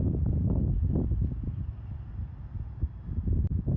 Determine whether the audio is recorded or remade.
recorded